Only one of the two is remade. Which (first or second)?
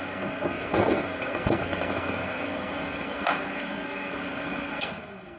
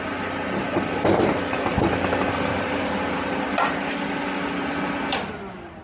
first